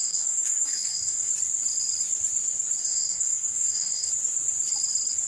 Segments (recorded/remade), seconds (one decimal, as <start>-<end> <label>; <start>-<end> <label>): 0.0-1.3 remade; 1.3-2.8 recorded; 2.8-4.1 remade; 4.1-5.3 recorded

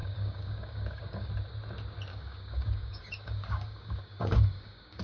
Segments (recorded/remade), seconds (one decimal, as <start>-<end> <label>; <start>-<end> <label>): 0.0-1.3 remade; 1.3-2.1 recorded; 2.1-5.0 remade

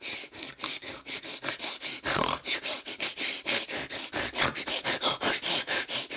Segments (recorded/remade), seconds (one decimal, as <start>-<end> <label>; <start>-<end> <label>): 0.0-6.2 recorded